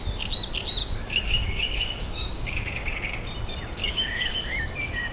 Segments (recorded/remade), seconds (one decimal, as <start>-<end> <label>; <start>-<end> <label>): 0.0-0.8 recorded; 0.8-3.0 remade; 3.0-3.8 recorded; 3.8-5.1 remade